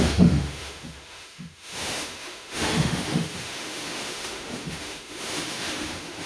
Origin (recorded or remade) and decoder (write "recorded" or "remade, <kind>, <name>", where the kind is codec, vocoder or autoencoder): remade, autoencoder, DAC-VAE